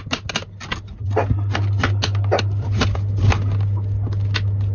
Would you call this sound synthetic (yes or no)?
no